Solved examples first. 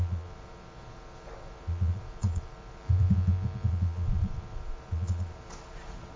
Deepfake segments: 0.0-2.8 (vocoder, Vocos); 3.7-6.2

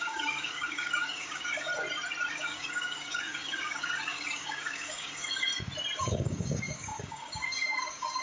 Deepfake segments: 0.0-1.7 (codec, DAC); 2.3-5.5; 6.0-8.2